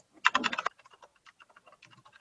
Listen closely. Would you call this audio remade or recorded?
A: recorded